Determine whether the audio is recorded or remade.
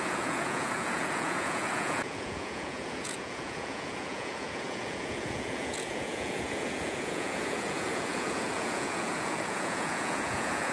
remade